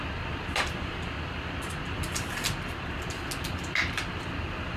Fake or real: real